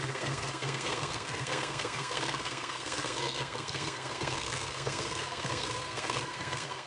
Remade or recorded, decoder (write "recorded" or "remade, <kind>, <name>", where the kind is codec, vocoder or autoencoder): remade, codec, SNAC